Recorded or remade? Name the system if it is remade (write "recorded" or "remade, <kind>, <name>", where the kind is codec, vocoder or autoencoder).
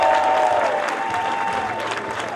recorded